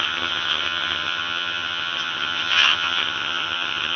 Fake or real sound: fake